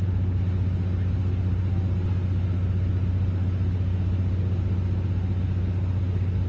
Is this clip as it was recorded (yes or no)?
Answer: yes